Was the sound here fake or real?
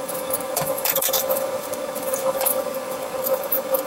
fake